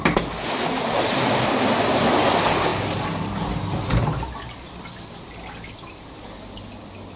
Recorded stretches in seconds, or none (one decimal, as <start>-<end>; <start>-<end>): 0.0-7.2